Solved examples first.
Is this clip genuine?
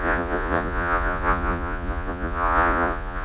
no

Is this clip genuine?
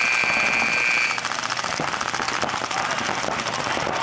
yes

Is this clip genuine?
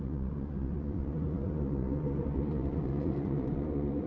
no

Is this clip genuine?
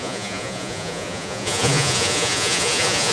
no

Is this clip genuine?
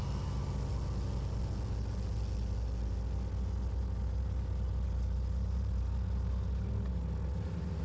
yes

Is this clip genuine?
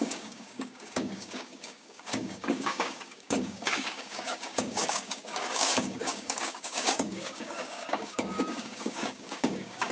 no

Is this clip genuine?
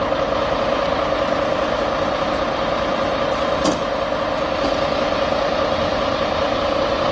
yes